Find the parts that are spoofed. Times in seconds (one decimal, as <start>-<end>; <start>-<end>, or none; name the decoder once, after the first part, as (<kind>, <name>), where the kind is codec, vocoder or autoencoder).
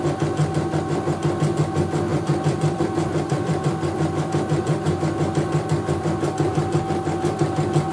2.1-6.8 (vocoder, BigVGAN v2)